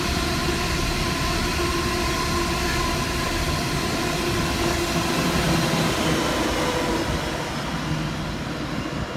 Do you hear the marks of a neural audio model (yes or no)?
no